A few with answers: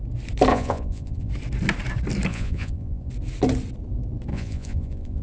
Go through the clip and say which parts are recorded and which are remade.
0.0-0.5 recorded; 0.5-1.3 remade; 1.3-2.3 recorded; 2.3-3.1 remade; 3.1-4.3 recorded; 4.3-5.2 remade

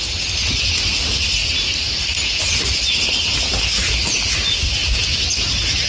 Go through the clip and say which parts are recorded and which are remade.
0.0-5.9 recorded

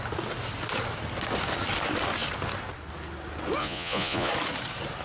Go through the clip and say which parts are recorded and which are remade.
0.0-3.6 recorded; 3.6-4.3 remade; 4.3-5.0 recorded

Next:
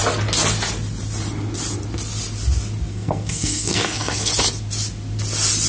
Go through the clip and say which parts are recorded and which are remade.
0.0-2.9 recorded; 2.9-4.3 remade; 4.3-5.7 recorded

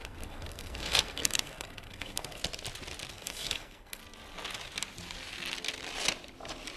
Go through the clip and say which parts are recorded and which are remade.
0.0-2.4 remade; 2.4-3.1 recorded; 3.1-4.0 remade; 4.0-6.8 recorded

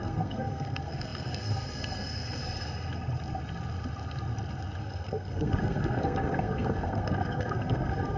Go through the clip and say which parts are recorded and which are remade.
0.0-2.4 remade; 2.4-4.8 recorded; 4.8-8.2 remade

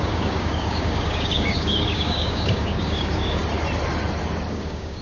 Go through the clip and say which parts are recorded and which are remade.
0.0-3.4 remade; 3.4-4.5 recorded; 4.5-5.0 remade

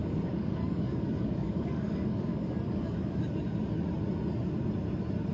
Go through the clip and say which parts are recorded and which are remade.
0.0-3.2 remade; 3.2-5.3 recorded